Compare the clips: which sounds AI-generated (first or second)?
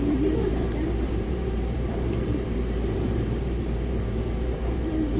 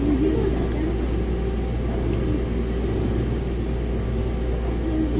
first